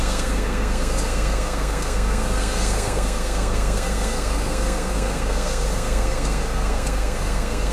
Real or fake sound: fake